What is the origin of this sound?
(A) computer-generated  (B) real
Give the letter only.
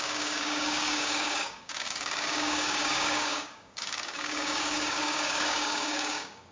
A